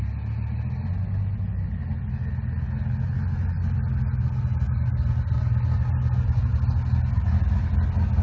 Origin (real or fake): real